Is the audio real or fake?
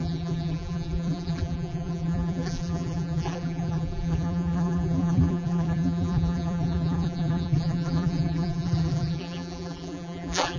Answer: fake